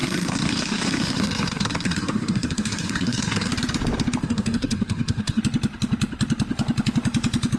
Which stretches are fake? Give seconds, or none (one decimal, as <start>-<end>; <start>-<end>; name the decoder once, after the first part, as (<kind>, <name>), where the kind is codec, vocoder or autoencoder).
0.0-3.5 (codec, SNAC); 4.2-5.4